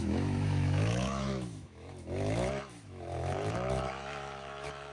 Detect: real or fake fake